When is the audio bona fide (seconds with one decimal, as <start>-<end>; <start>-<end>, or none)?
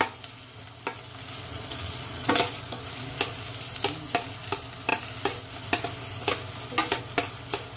0.0-1.5; 2.3-7.8